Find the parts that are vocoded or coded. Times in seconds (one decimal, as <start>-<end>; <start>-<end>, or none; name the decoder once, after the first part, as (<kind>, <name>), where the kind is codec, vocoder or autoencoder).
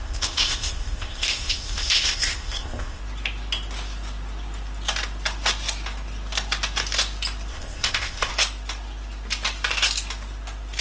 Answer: 0.0-3.0 (codec, ZipCodec); 7.5-8.3